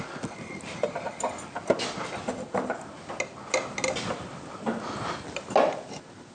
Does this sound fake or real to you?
real